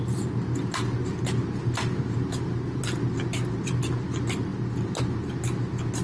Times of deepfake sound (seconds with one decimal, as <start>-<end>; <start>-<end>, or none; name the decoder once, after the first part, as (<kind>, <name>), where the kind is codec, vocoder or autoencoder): 1.6-2.8 (vocoder, BigVGAN v2)

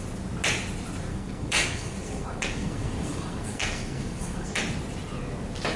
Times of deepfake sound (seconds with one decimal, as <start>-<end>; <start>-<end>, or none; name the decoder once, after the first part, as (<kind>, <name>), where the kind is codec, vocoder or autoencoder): 1.1-4.6 (codec, SNAC)

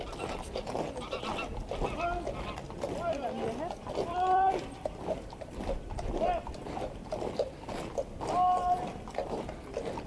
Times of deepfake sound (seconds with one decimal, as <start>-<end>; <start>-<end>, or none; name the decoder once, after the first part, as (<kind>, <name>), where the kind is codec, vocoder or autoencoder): 3.1-7.9 (vocoder, BigVGAN v2)